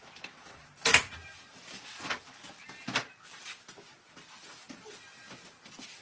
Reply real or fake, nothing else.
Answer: real